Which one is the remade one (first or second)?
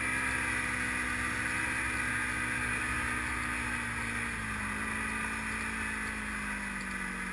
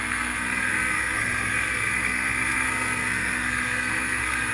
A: second